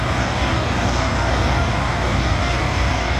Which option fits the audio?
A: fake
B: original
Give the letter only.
A